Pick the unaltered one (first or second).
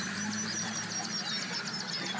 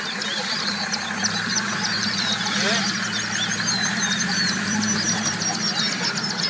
first